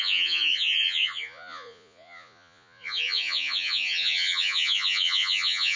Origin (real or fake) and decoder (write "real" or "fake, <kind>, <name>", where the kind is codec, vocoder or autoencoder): fake, vocoder, Vocos